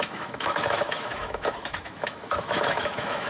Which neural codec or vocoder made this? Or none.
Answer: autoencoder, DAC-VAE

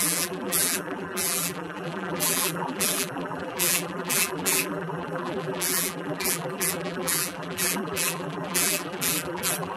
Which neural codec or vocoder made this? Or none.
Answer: vocoder, BigVGAN v2